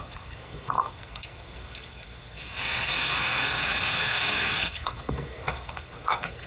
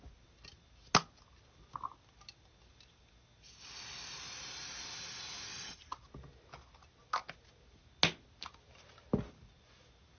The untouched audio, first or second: second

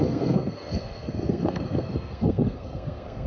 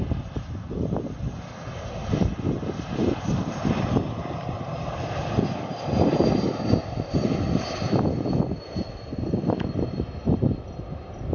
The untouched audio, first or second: second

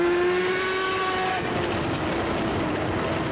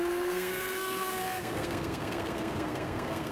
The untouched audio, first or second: first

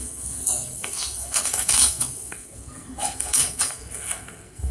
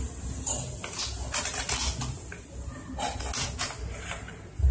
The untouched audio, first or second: second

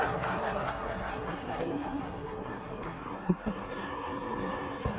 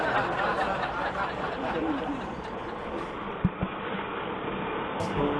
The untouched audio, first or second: second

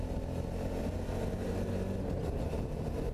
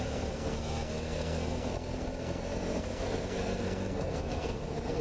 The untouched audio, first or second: first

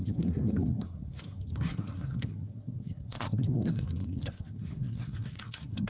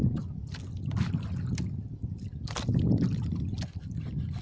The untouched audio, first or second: second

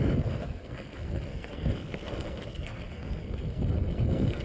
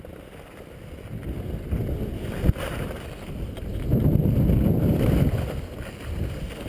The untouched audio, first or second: second